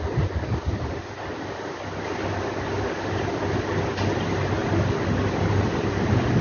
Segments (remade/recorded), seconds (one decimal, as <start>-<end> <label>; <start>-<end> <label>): 0.0-6.4 recorded